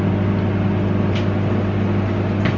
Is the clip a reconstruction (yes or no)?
no